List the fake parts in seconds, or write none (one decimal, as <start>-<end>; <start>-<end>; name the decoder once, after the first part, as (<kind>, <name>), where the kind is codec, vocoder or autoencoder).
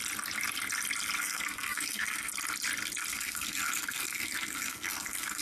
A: 1.2-2.3 (codec, SNAC); 3.1-5.4